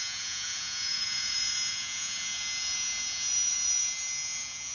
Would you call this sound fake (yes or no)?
yes